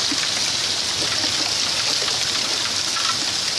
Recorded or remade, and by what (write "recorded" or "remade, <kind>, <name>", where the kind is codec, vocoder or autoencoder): recorded